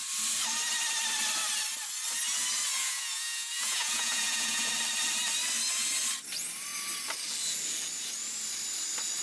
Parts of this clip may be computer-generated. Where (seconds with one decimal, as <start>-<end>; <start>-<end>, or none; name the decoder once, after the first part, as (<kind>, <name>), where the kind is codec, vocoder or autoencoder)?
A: 2.8-4.7 (vocoder, Vocos)